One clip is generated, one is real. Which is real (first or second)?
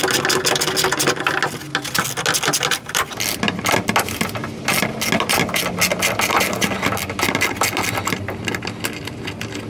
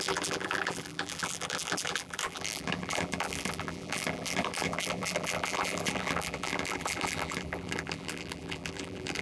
first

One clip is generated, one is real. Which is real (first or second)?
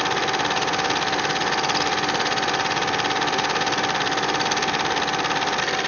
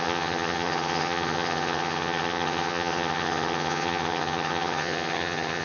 first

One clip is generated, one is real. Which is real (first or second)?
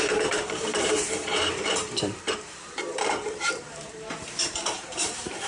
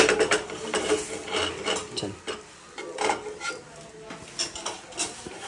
second